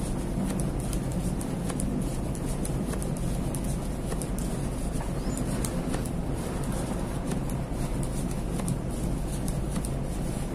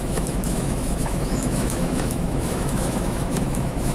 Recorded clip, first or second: first